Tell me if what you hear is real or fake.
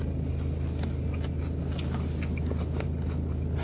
real